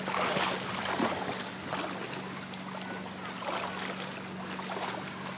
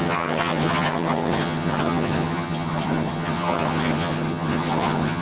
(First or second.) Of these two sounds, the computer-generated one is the second